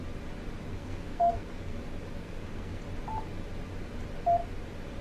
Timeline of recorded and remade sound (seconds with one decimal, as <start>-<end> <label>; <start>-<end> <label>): 0.0-0.7 recorded; 0.7-1.8 remade; 1.8-2.2 recorded; 2.2-2.8 remade; 2.8-5.0 recorded